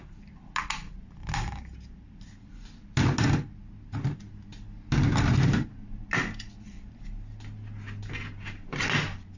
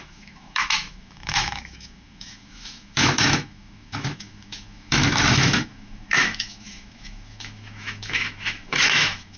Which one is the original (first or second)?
first